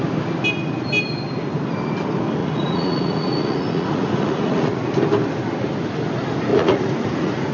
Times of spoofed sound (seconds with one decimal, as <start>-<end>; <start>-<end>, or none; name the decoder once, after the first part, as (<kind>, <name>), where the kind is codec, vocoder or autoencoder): 2.4-4.9 (vocoder, Vocos); 6.5-7.5